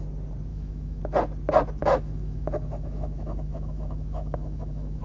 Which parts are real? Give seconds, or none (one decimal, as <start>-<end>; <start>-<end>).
0.0-0.5; 1.0-1.8

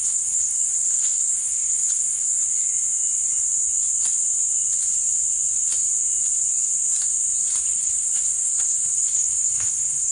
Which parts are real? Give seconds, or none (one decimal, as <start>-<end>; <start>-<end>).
2.4-7.6

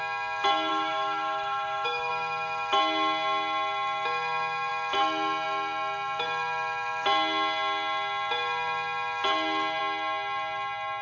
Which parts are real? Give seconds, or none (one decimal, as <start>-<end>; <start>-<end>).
0.0-0.7; 2.1-11.0